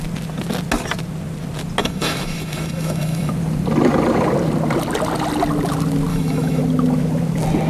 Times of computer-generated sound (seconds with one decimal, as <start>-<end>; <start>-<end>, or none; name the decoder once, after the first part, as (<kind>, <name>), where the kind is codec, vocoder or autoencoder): 1.8-3.3 (autoencoder, DAC-VAE); 6.1-6.6